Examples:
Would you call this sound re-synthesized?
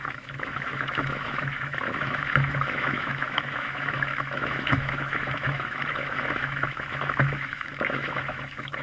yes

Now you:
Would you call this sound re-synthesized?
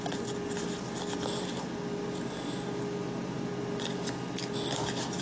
no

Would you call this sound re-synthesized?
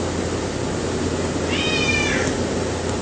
no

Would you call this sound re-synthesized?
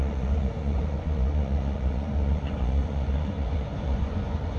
yes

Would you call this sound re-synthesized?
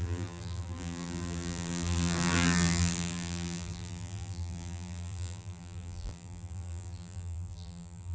yes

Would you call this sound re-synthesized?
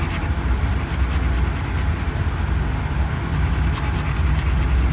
no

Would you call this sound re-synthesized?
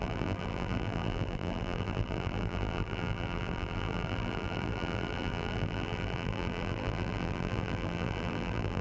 yes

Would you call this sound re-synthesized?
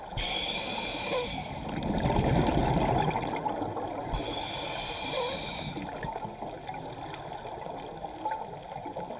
no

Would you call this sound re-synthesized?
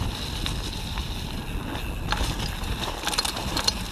no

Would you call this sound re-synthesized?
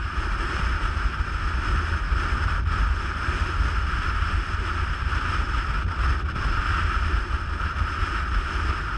no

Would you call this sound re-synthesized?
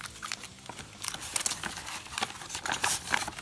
no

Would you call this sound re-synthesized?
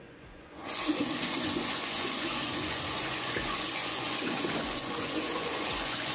yes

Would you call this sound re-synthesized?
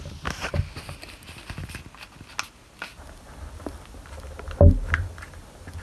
no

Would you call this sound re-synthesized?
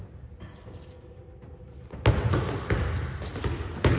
no